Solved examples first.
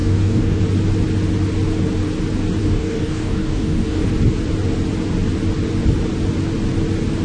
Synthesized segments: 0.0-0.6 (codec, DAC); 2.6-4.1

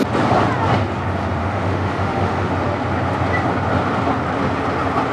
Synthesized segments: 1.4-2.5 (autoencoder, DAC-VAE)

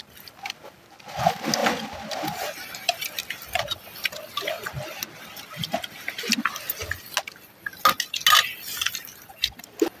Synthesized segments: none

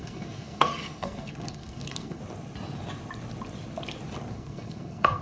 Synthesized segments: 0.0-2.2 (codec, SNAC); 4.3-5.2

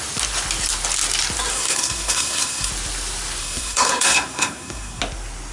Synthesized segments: 1.5-2.7 (codec, SNAC); 3.4-5.0